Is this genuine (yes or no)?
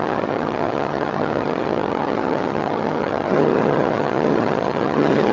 no